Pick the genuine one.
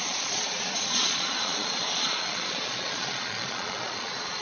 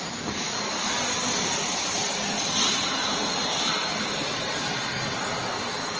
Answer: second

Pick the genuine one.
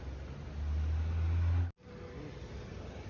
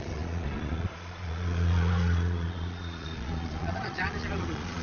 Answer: first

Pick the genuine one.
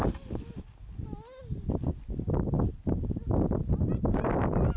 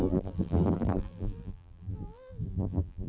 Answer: first